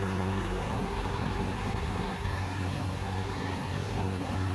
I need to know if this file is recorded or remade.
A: remade